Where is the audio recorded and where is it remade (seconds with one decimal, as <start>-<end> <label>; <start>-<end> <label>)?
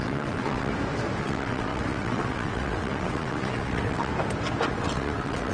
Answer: 0.0-0.7 remade; 0.7-1.2 recorded; 1.2-4.1 remade; 4.1-4.7 recorded; 4.7-5.5 remade